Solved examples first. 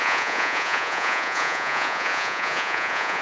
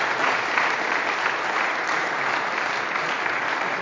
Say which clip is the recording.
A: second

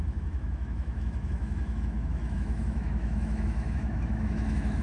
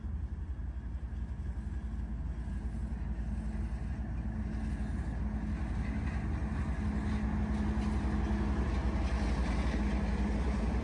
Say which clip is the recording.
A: second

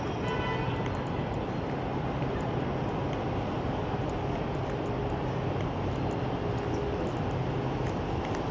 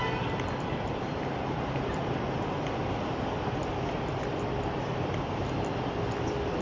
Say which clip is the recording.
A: first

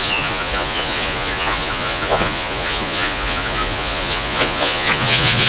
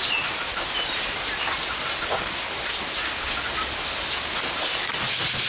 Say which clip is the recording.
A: second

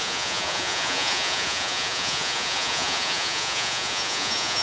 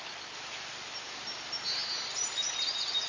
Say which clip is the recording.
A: second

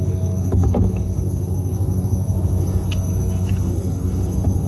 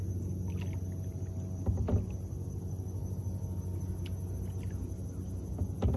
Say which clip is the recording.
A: second